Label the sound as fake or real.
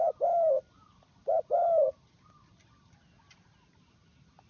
real